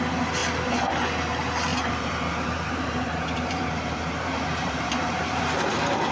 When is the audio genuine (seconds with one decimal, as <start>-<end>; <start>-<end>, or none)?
0.0-1.7; 5.4-6.1